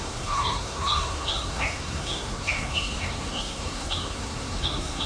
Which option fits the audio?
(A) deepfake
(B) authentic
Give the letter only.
A